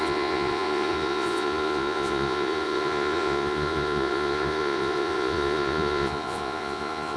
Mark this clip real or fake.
fake